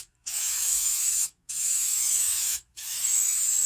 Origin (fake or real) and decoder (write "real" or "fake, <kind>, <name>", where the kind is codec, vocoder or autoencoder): fake, autoencoder, DAC-VAE